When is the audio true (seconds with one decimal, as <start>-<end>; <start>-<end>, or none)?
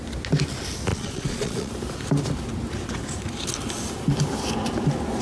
0.0-0.9; 1.7-5.2